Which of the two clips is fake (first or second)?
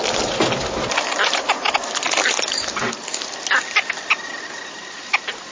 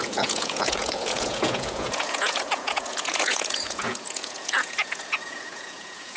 second